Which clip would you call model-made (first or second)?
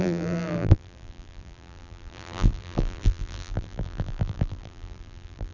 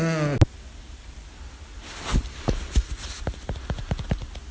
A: first